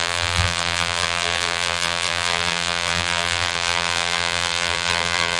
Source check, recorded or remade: remade